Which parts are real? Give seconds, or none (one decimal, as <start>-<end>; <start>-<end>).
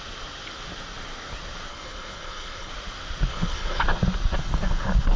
0.0-1.7; 2.7-3.3; 3.8-5.2